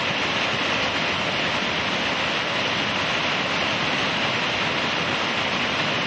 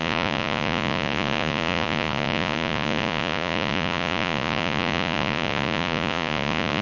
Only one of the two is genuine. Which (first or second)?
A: first